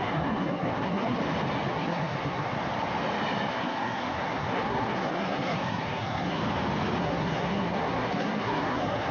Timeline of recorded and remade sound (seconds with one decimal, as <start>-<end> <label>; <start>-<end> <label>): 0.0-1.2 remade; 1.2-1.7 recorded; 1.7-2.5 remade; 2.5-3.5 recorded; 3.5-6.4 remade; 6.4-7.0 recorded; 7.0-9.1 remade